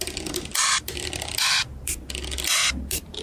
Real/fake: real